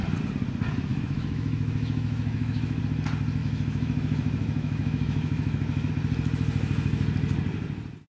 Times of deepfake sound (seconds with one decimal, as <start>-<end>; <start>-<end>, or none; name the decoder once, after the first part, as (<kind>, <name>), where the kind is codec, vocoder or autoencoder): 0.9-2.8 (autoencoder, DAC-VAE); 3.4-5.9

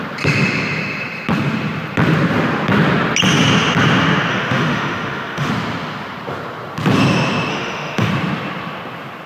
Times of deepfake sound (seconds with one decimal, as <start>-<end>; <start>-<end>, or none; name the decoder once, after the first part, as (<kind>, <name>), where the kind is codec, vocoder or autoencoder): 4.3-5.5 (autoencoder, DAC-VAE); 7.5-8.1

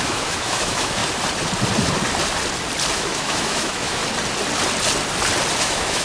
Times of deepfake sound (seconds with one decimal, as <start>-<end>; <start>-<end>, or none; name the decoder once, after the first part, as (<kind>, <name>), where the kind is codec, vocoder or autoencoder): 0.0-1.0 (autoencoder, DAC-VAE); 2.9-4.0; 5.6-6.0

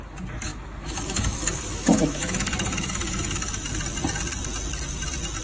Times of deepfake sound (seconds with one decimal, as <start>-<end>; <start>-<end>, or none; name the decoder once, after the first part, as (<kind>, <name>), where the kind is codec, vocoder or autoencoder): 0.5-3.7 (autoencoder, DAC-VAE)

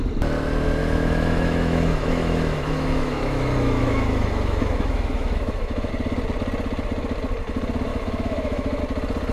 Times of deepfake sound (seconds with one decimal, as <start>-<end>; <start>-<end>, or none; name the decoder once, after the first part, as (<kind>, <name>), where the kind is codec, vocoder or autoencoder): 0.8-5.9 (autoencoder, DAC-VAE); 7.9-8.8

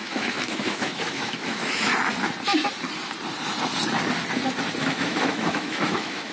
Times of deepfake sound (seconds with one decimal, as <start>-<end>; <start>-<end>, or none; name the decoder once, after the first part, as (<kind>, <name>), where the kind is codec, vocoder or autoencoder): 0.0-1.9 (autoencoder, DAC-VAE); 4.8-6.3

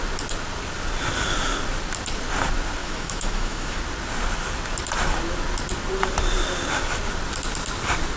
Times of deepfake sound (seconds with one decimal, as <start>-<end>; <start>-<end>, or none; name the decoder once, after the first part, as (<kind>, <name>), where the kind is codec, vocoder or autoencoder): 2.8-3.8 (autoencoder, DAC-VAE)